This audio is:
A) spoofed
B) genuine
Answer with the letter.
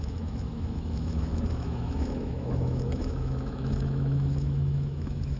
A